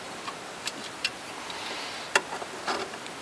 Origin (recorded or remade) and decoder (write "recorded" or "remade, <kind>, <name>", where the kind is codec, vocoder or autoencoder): recorded